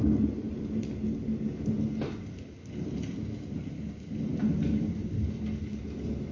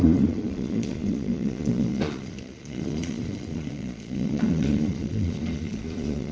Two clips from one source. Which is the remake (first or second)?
second